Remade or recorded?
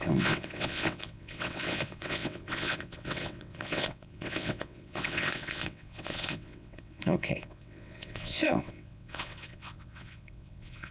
remade